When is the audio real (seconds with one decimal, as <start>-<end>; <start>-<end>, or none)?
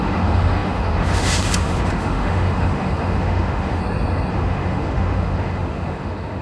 3.8-4.3